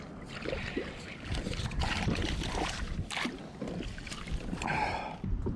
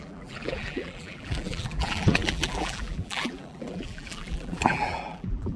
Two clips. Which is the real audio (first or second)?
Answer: first